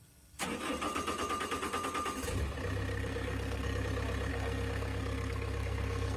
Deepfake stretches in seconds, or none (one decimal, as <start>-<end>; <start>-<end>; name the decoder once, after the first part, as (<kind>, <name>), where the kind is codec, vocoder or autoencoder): 2.9-3.8 (codec, SNAC); 4.3-6.2